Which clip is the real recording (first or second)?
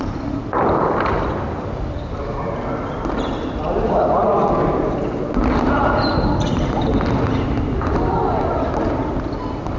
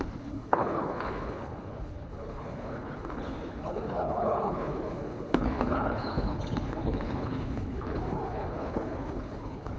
first